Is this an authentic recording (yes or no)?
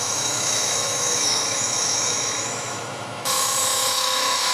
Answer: no